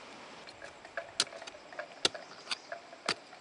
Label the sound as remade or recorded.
recorded